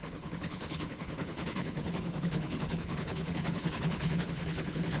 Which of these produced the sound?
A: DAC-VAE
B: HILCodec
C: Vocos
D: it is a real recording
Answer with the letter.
B